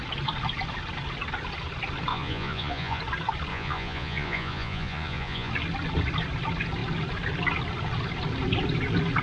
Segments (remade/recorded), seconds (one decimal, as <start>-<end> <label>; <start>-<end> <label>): 0.0-2.1 recorded; 2.1-3.0 remade; 3.0-3.5 recorded; 3.5-5.5 remade; 5.5-9.2 recorded